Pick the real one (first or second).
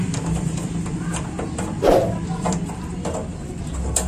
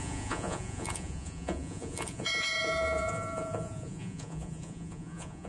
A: first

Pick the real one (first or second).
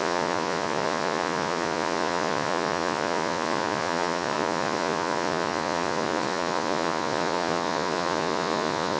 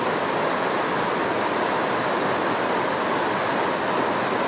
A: second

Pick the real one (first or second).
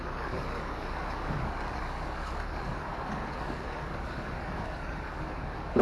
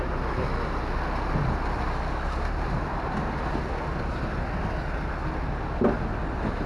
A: second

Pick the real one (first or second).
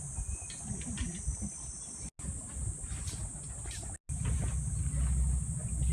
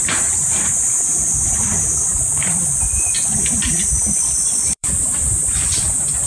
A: first